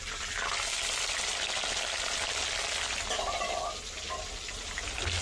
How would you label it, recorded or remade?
recorded